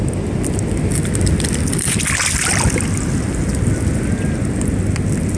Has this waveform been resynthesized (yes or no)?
no